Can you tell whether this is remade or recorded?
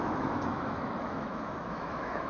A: remade